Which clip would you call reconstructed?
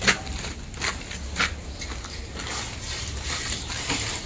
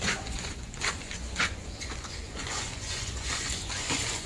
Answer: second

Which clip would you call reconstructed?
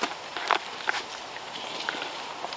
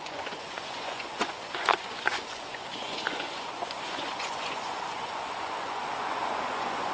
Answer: second